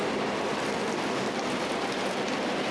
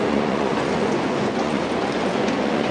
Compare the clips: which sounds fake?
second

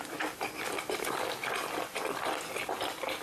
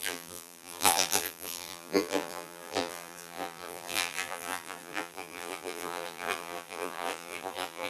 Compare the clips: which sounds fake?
second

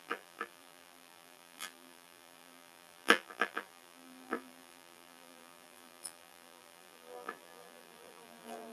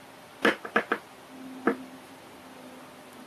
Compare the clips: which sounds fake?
first